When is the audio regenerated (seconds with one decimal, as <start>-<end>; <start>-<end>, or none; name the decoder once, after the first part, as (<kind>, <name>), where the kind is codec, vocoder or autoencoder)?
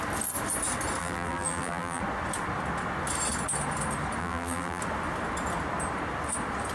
1.0-2.0 (vocoder, BigVGAN v2); 4.2-4.8